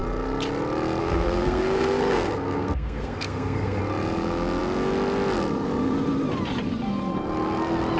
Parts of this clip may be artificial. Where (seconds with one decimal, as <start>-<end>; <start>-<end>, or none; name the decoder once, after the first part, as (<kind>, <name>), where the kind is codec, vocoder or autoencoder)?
1.0-3.8 (codec, SNAC)

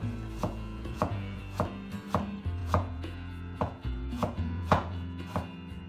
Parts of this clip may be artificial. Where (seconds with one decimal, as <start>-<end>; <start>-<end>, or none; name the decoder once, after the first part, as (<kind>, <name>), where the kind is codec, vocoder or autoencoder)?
0.4-1.4 (vocoder, Vocos); 2.6-5.2